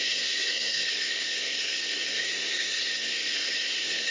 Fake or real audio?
fake